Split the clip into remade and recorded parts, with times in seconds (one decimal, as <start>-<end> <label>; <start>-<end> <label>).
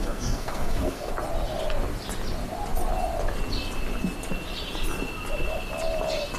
0.0-1.1 remade; 1.1-6.4 recorded